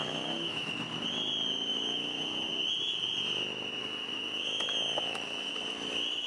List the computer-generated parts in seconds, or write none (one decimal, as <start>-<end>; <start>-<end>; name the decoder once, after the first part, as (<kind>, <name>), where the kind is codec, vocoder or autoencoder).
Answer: 0.0-0.7 (autoencoder, DAC-VAE); 1.7-2.5; 3.8-5.5